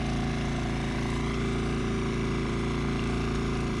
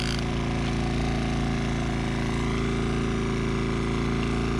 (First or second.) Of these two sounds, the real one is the second